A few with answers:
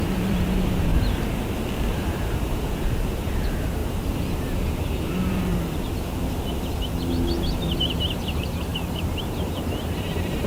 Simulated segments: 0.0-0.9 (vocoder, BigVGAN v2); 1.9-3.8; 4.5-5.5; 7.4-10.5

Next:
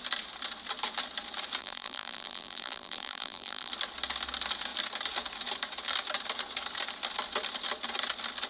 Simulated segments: 1.6-3.7 (vocoder, BigVGAN v2)

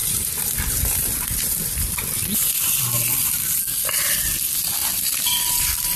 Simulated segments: 0.0-3.6 (vocoder, BigVGAN v2); 4.8-6.0

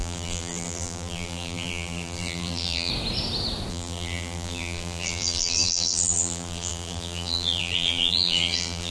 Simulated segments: 0.0-2.9 (vocoder, BigVGAN v2); 3.7-8.9

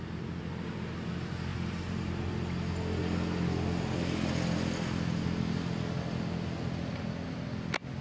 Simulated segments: 1.5-2.3 (vocoder, BigVGAN v2)